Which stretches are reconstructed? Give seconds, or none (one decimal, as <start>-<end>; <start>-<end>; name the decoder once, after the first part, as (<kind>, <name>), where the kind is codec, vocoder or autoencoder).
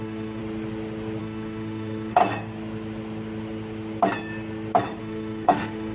0.0-0.4 (autoencoder, DAC-VAE); 1.2-2.2; 5.0-5.9